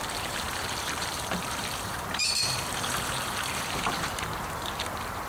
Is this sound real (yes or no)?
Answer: no